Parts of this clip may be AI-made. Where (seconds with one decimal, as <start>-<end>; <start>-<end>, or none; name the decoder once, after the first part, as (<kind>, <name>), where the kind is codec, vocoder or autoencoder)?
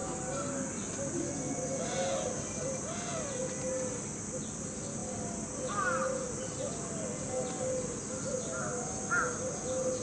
none